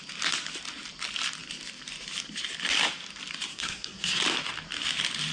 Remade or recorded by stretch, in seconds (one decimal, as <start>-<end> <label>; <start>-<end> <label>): 0.0-3.5 recorded; 3.5-4.2 remade; 4.2-5.3 recorded